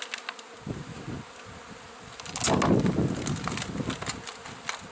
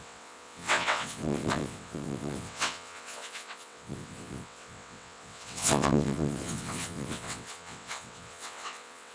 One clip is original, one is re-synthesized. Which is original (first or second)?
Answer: first